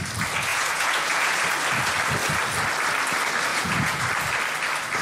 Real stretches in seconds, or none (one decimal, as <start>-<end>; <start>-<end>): 0.0-0.5; 1.4-3.5; 4.0-5.0